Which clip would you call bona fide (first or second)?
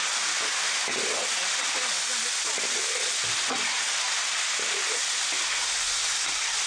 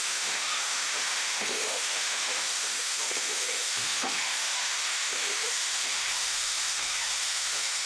first